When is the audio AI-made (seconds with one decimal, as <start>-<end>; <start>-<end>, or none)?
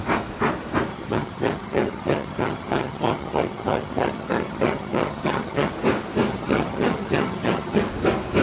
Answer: 0.9-5.7; 6.3-7.8